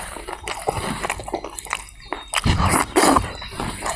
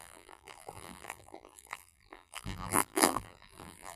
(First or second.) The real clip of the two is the first